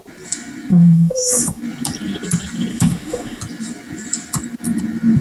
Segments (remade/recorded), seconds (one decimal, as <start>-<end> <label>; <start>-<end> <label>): 0.0-0.7 recorded; 0.7-1.6 remade; 1.6-2.7 recorded; 2.7-3.4 remade; 3.4-5.2 recorded